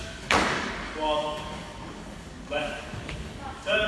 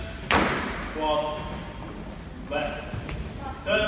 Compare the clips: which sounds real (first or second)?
second